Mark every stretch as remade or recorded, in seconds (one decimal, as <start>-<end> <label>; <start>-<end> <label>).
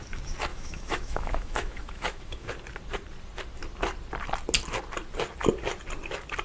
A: 0.0-0.5 recorded; 0.5-2.5 remade; 2.5-6.4 recorded